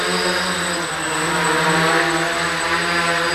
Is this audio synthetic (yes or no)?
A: no